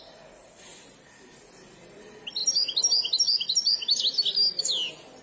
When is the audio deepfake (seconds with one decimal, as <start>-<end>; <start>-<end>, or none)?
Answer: none